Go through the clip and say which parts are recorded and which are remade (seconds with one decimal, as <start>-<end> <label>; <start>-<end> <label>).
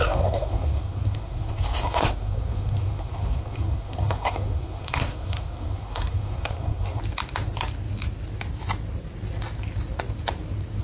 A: 0.0-7.0 remade; 7.0-10.8 recorded